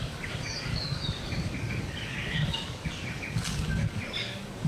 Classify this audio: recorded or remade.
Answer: remade